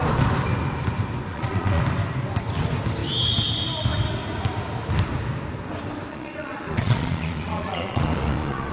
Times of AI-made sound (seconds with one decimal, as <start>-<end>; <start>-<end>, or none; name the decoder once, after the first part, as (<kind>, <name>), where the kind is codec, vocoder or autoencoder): 1.3-1.8 (vocoder, Vocos); 6.1-8.7